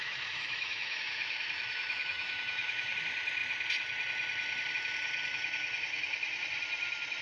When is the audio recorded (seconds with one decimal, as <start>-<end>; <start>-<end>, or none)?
2.9-7.2